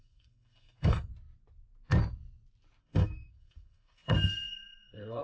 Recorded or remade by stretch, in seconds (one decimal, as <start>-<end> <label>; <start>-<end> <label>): 0.0-1.1 remade; 1.1-2.8 recorded; 2.8-5.2 remade